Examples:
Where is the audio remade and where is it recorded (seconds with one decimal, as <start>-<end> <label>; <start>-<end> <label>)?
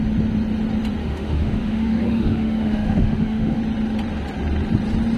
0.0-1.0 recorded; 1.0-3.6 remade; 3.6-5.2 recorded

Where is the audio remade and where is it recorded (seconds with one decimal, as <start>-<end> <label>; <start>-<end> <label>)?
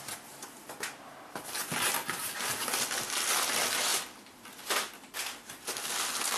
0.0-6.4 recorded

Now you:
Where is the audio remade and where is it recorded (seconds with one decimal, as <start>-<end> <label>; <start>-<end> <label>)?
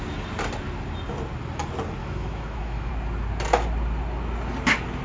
0.0-2.0 recorded; 2.0-2.9 remade; 2.9-5.0 recorded